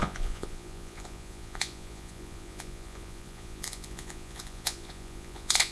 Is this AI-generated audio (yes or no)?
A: yes